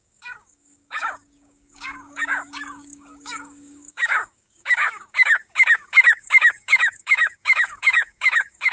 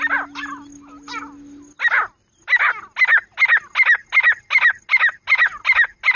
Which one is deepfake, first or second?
first